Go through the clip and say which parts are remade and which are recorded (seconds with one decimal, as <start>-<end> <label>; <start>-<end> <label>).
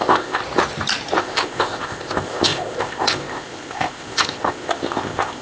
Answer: 0.0-0.4 remade; 0.4-1.2 recorded; 1.2-5.4 remade